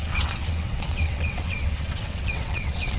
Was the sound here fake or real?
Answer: fake